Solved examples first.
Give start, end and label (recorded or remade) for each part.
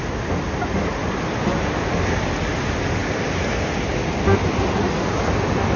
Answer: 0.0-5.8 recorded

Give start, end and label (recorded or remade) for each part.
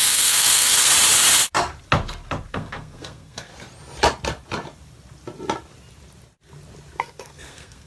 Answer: 0.0-0.9 remade; 0.9-2.5 recorded; 2.5-3.5 remade; 3.5-7.0 recorded; 7.0-7.9 remade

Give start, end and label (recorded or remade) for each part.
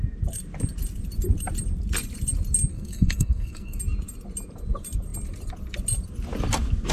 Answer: 0.0-2.7 recorded; 2.7-3.8 remade; 3.8-6.9 recorded